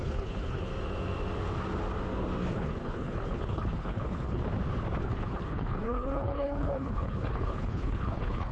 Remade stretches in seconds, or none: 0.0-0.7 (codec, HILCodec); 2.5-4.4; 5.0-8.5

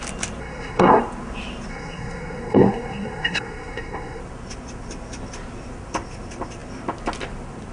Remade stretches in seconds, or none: 0.4-1.0 (codec, SNAC); 1.7-4.2

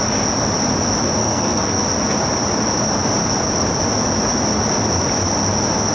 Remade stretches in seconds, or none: 1.2-1.8 (codec, SNAC)

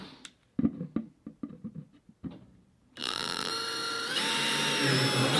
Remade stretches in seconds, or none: 3.0-3.5 (vocoder, BigVGAN v2)